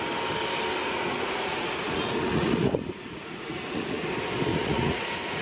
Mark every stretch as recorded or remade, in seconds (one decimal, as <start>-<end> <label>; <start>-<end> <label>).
0.0-0.8 recorded; 0.8-4.0 remade; 4.0-4.5 recorded; 4.5-5.4 remade